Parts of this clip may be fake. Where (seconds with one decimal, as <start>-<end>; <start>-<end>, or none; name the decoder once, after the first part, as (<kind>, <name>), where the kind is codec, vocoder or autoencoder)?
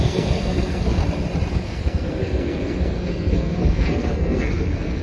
0.0-1.0 (codec, SNAC); 1.5-5.0